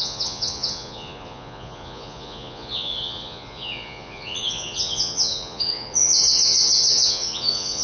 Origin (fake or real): fake